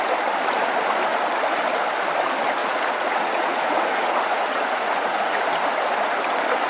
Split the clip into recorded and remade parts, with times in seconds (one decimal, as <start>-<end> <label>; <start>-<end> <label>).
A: 0.0-2.6 recorded; 2.6-5.4 remade; 5.4-6.7 recorded